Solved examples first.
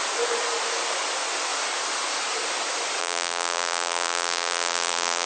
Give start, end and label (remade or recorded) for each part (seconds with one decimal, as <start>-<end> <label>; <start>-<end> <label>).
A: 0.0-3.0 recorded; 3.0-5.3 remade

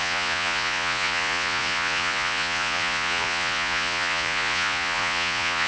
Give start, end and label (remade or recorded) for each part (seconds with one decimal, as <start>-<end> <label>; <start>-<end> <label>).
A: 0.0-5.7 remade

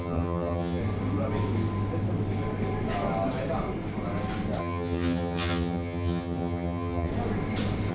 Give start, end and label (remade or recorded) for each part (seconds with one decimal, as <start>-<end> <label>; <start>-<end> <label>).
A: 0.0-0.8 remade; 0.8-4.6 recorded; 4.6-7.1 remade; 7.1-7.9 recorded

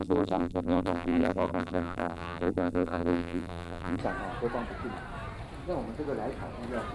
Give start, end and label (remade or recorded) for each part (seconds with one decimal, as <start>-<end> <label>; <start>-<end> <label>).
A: 0.0-4.0 remade; 4.0-6.9 recorded

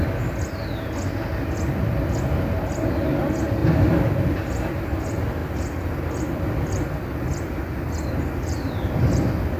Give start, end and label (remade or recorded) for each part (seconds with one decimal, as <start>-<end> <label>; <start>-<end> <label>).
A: 0.0-9.6 recorded

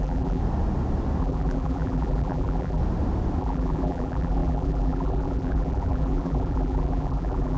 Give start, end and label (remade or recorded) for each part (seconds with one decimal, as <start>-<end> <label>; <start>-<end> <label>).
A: 0.0-0.4 remade; 0.4-1.2 recorded; 1.2-2.8 remade; 2.8-3.4 recorded; 3.4-7.6 remade